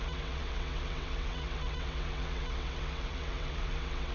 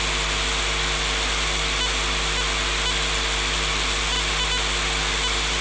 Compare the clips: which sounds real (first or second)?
second